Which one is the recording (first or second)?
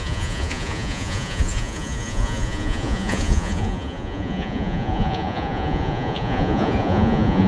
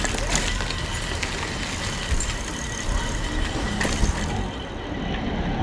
second